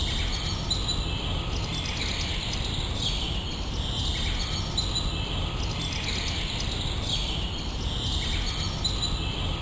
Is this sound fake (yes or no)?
no